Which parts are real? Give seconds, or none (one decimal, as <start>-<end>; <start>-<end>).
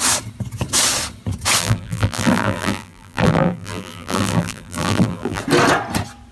0.0-1.6; 5.4-6.3